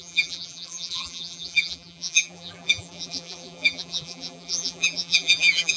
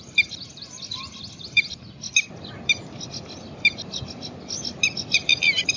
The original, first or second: second